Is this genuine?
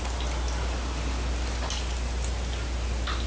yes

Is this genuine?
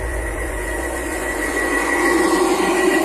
no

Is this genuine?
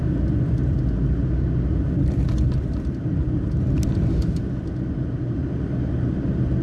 yes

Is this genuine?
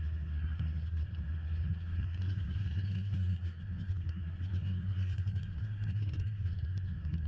no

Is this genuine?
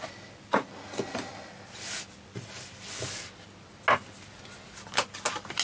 yes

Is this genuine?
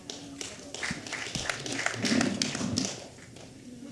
yes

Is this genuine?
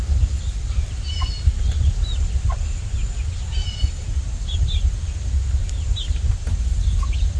yes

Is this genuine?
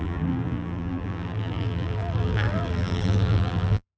no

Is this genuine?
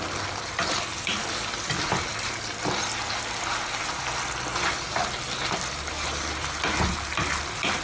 yes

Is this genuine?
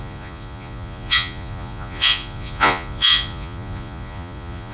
no